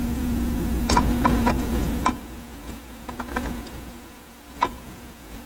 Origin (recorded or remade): remade